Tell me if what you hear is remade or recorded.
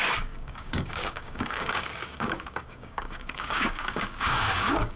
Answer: remade